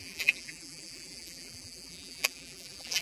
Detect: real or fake fake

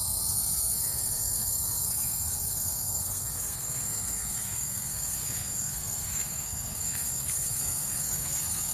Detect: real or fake fake